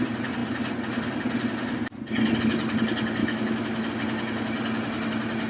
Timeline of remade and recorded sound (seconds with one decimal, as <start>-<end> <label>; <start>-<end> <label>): 0.0-3.2 recorded; 3.2-3.9 remade; 3.9-5.5 recorded

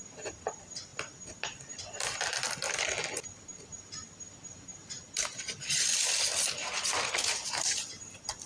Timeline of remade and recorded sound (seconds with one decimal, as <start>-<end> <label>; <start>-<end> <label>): 0.0-8.5 recorded